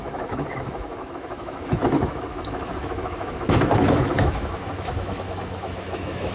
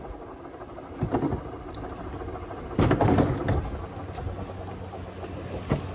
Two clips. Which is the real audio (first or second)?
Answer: second